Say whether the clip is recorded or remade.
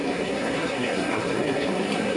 remade